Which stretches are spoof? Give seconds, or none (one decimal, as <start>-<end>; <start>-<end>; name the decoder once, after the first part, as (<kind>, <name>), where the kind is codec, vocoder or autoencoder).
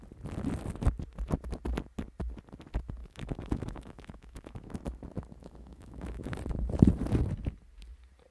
3.0-4.8 (autoencoder, DAC-VAE); 5.4-6.3